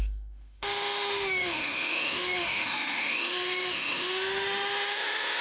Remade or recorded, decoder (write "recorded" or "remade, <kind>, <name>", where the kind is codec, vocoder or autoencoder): remade, autoencoder, DAC-VAE